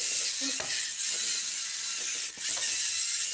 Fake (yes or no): no